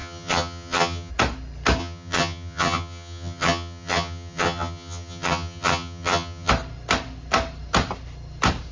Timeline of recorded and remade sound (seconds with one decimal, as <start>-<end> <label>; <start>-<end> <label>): 0.0-1.1 remade; 1.1-1.8 recorded; 1.8-6.5 remade; 6.5-8.7 recorded